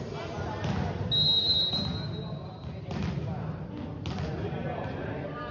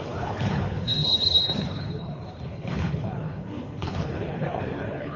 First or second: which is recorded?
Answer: first